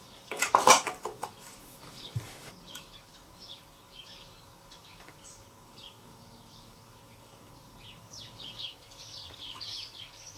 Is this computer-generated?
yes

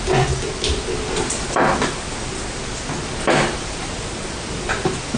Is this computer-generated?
no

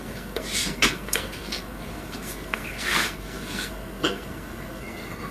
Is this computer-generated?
yes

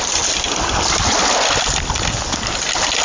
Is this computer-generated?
no